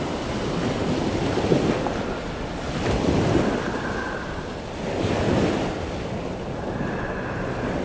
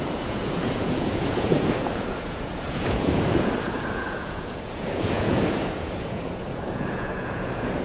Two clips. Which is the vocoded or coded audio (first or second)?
second